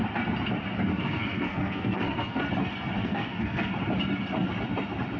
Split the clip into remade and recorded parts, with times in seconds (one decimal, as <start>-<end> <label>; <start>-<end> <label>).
0.0-0.9 recorded; 0.9-2.4 remade; 2.4-3.0 recorded; 3.0-3.7 remade; 3.7-5.2 recorded